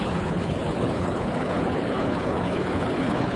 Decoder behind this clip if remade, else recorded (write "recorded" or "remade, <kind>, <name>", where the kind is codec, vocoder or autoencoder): remade, codec, HILCodec